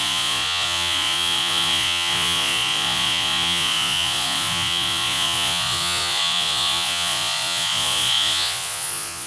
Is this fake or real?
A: fake